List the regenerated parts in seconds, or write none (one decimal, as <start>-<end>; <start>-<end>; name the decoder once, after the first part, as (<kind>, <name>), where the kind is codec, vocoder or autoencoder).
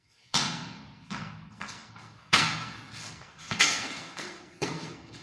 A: 0.0-5.2 (codec, SNAC)